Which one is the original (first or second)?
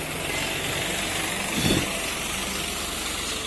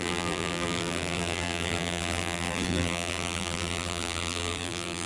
first